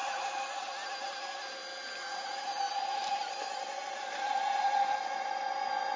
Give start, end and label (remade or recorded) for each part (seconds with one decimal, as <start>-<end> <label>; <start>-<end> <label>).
0.0-6.0 recorded